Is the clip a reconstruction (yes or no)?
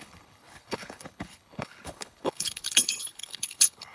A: yes